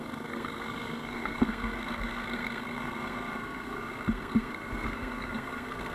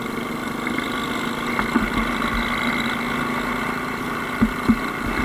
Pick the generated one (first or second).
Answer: first